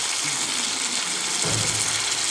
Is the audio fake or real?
real